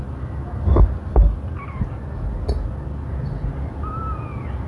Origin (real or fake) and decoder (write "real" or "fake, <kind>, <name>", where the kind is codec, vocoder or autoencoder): real